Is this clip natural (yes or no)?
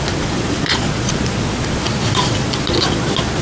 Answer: no